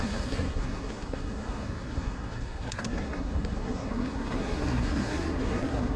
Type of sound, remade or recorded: remade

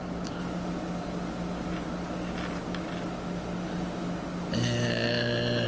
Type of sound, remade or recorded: recorded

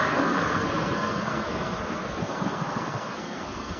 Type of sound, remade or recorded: remade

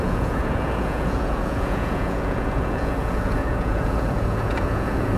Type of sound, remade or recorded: remade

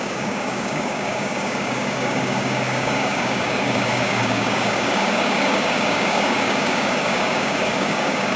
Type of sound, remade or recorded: remade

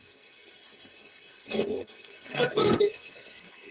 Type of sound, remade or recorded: remade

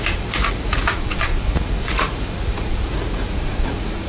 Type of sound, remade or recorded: remade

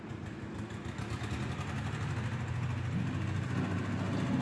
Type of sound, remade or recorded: recorded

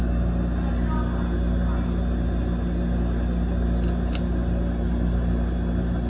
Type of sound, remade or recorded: recorded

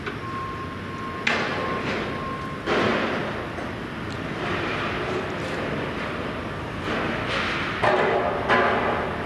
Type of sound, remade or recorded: recorded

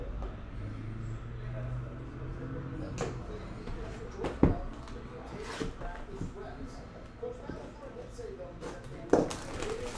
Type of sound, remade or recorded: recorded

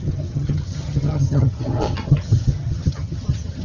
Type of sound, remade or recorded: remade